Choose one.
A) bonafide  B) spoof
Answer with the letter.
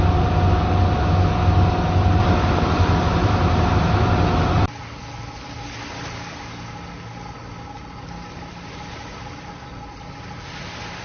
A